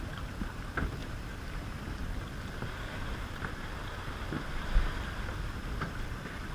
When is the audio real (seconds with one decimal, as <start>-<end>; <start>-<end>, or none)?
none